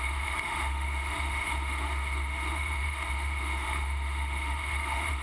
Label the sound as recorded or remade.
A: remade